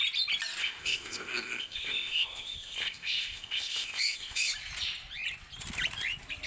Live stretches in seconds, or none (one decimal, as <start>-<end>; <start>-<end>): 0.0-0.6; 4.5-6.5